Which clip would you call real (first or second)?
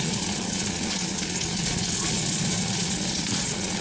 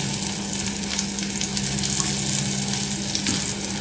second